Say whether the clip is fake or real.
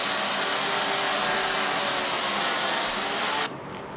real